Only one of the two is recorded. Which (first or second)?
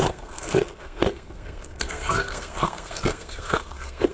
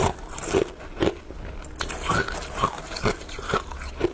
second